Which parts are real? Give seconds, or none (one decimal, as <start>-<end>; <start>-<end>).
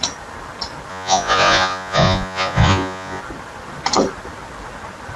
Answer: 0.0-0.9; 3.2-5.2